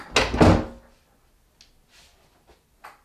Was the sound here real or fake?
real